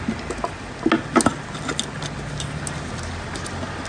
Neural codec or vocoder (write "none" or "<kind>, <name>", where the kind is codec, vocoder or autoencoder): none